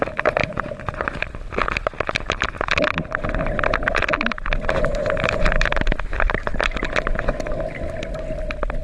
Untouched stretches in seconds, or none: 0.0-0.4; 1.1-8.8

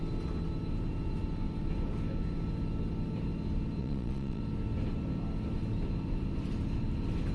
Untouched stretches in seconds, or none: 0.0-3.8; 4.4-7.3

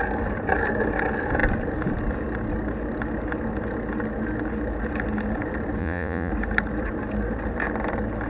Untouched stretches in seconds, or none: 0.0-5.8; 6.3-8.3

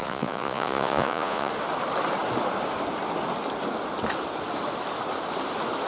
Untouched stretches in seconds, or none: 1.5-5.9

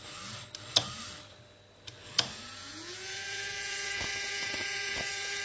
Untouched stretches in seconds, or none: 0.0-2.3

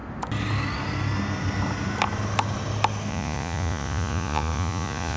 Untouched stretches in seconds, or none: 0.0-3.1

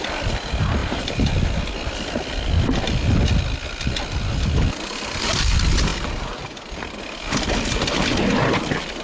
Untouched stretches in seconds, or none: 0.0-9.0